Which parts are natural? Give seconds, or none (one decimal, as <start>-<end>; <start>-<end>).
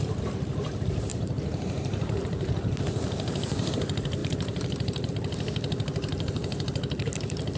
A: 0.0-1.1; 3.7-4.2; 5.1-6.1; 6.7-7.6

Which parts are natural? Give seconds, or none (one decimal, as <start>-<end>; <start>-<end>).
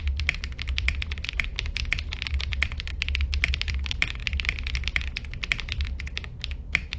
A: 1.5-2.4; 2.9-3.5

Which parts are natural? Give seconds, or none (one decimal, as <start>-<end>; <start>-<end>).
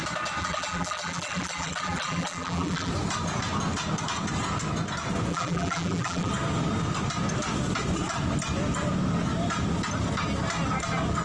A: 0.0-0.4; 2.9-5.3; 6.3-11.2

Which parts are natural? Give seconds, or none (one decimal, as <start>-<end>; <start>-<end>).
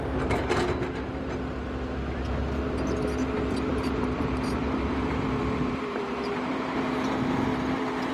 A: 0.0-3.7; 6.8-8.1